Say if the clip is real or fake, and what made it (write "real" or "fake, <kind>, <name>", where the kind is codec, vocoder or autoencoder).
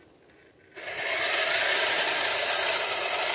real